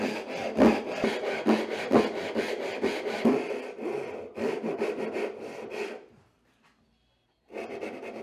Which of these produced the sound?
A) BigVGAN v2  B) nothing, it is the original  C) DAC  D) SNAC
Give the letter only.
B